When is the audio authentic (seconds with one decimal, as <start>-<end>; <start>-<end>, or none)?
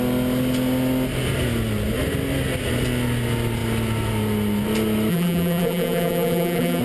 0.0-5.1